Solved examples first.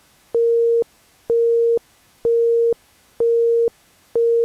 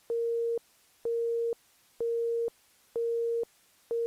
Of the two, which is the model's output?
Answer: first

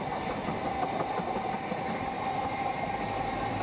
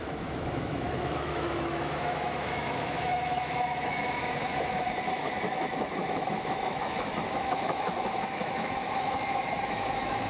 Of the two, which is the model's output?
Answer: second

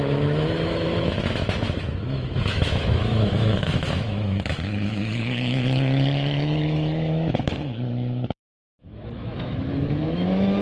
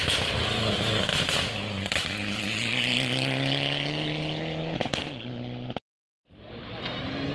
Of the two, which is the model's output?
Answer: first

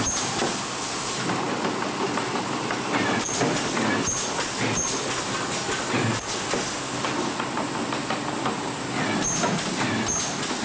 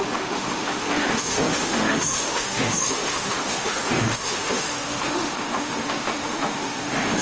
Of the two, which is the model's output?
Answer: second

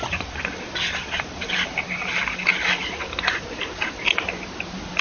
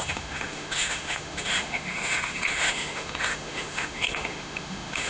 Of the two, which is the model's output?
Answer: second